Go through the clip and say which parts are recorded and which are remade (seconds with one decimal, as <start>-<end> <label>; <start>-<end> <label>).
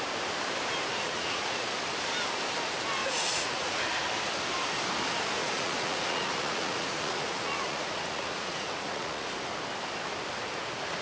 0.0-0.9 recorded; 0.9-1.8 remade; 1.8-3.0 recorded; 3.0-3.8 remade; 3.8-5.4 recorded; 5.4-9.3 remade; 9.3-11.0 recorded